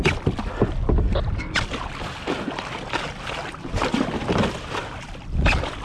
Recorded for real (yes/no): yes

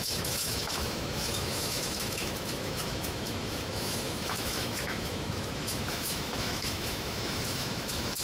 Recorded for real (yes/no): no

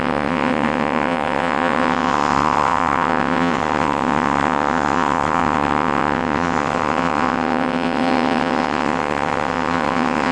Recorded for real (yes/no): no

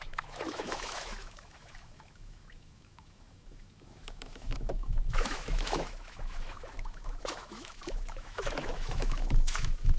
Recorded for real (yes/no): no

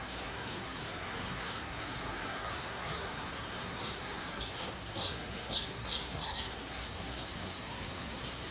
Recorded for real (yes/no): no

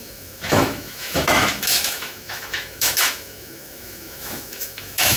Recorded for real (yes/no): no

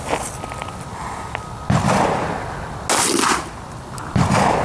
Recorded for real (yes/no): yes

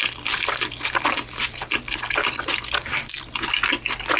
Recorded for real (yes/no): yes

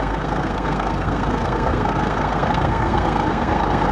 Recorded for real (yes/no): no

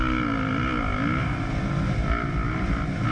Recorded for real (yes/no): yes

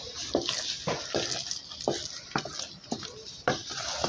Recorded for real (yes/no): yes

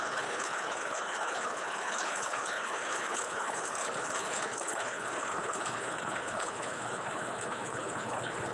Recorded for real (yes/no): no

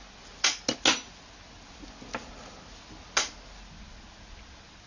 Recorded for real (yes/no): yes